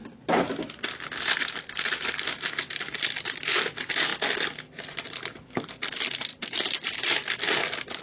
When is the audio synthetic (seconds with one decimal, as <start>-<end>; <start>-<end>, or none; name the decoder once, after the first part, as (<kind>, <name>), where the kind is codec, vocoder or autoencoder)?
none